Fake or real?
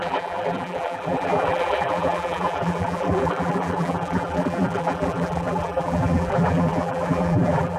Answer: fake